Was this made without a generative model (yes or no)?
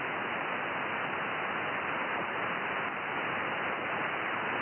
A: yes